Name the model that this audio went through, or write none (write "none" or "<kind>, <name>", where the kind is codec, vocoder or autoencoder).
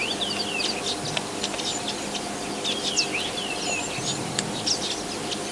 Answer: none